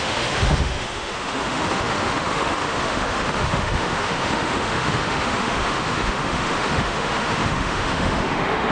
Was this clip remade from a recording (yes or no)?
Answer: yes